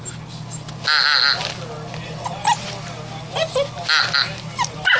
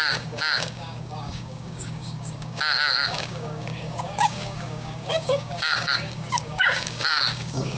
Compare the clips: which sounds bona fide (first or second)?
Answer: first